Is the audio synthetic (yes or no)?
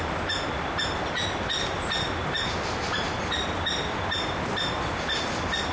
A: no